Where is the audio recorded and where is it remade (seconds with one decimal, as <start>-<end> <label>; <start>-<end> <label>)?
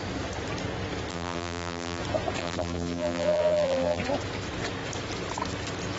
0.0-1.1 recorded; 1.1-2.0 remade; 2.0-2.4 recorded; 2.4-4.0 remade; 4.0-6.0 recorded